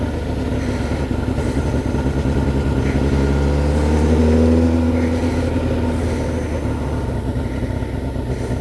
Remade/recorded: recorded